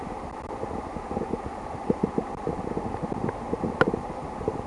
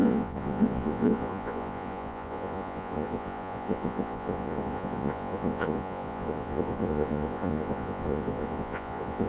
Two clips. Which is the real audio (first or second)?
first